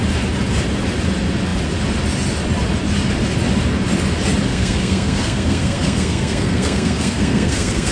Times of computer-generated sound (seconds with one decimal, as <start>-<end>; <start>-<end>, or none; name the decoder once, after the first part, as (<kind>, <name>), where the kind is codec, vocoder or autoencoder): 4.5-7.9 (codec, SNAC)